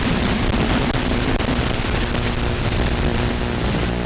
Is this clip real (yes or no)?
no